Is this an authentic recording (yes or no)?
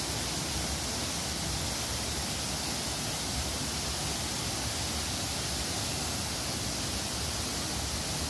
yes